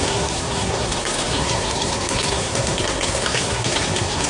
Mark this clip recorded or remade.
remade